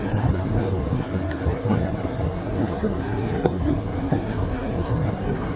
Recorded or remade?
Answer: remade